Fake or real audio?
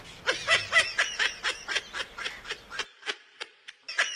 real